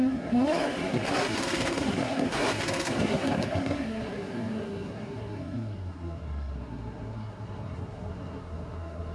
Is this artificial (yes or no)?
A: yes